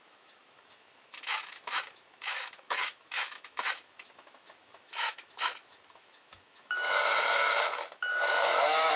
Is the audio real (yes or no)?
no